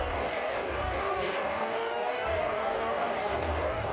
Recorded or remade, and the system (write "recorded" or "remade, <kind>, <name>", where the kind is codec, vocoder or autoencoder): remade, codec, DAC